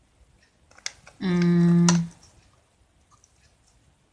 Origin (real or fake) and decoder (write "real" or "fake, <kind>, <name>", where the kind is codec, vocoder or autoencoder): real